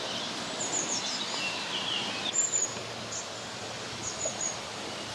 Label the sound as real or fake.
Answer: fake